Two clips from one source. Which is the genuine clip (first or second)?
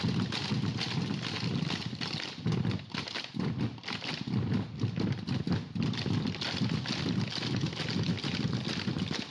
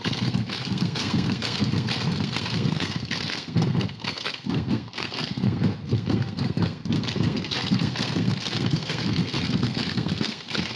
first